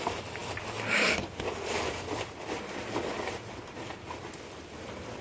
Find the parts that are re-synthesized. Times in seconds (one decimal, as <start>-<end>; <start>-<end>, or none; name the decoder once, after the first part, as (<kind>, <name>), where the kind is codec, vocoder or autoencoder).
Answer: none